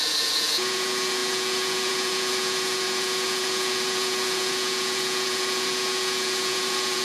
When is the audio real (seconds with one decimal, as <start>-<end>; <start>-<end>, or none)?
none